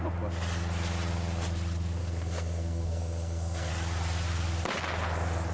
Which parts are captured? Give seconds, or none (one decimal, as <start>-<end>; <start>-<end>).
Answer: 0.0-2.0; 3.7-5.5